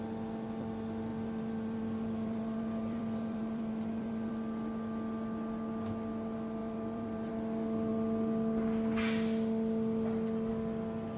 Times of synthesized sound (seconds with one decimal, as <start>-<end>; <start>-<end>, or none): 1.1-4.3; 6.6-7.3